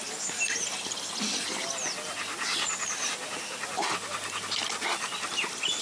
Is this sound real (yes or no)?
yes